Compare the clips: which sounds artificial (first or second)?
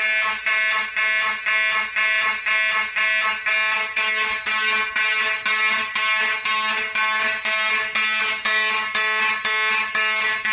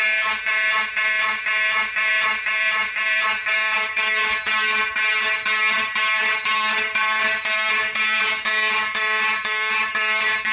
second